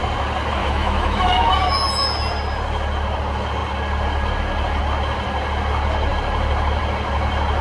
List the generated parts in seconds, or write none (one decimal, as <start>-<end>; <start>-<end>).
0.6-1.5